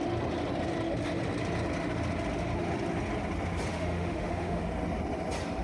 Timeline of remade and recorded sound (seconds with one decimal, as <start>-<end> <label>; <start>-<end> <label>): 0.0-3.7 recorded; 3.7-4.6 remade; 4.6-5.6 recorded